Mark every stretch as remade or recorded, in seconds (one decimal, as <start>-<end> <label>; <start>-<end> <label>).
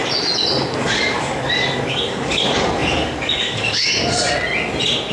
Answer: 0.0-0.8 recorded; 0.8-3.9 remade; 3.9-5.1 recorded